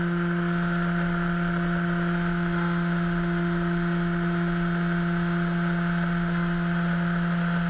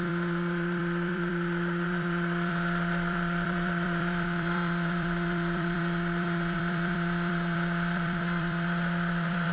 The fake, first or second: second